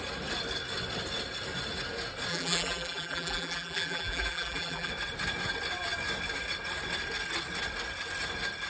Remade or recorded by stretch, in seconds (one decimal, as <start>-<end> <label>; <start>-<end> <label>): 0.0-2.3 recorded; 2.3-4.9 remade; 4.9-8.7 recorded